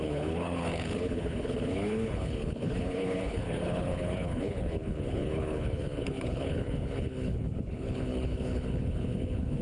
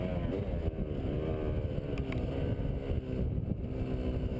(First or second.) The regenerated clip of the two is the first